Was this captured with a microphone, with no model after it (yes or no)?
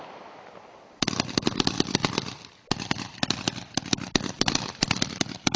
yes